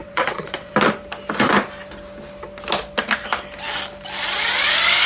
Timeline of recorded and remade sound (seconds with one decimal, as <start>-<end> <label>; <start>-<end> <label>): 0.0-0.7 remade; 0.7-5.1 recorded